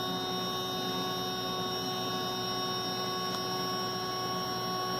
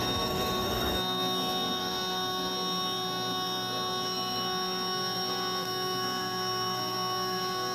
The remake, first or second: second